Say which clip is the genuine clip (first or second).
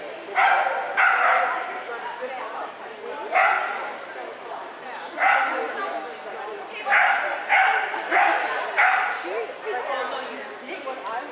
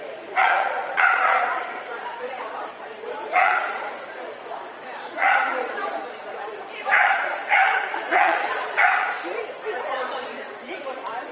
first